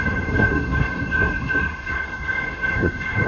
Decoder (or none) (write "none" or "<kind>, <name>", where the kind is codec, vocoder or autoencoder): codec, SNAC